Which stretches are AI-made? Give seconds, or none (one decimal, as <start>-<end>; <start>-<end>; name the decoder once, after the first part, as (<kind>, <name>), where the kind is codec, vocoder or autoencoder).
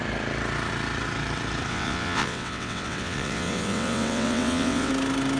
1.7-4.9 (vocoder, WaveNeXt)